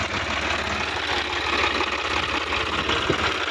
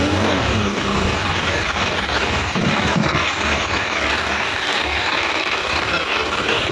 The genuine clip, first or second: first